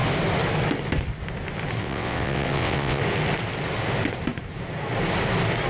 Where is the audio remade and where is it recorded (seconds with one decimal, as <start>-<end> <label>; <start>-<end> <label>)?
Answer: 0.0-1.8 recorded; 1.8-3.0 remade; 3.0-5.7 recorded